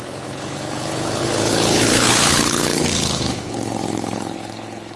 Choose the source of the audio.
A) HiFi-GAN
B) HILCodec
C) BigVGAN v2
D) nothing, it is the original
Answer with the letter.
B